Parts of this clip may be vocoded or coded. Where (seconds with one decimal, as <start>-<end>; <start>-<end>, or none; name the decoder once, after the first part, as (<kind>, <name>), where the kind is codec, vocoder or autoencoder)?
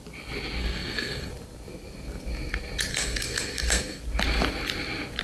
0.6-1.3 (codec, SNAC); 2.9-4.0